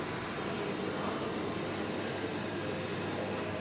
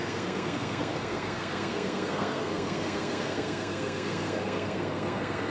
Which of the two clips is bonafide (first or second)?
first